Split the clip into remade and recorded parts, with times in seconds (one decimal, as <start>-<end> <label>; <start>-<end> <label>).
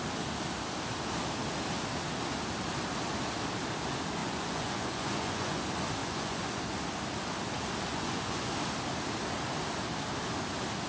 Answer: 0.0-4.2 recorded; 4.2-5.6 remade; 5.6-6.0 recorded; 6.0-6.6 remade; 6.6-7.9 recorded; 7.9-8.5 remade; 8.5-10.9 recorded